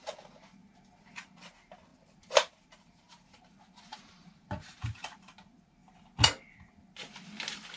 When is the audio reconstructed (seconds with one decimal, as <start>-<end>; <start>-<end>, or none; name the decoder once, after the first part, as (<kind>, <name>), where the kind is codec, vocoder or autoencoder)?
1.9-3.5 (vocoder, BigVGAN v2); 3.9-5.0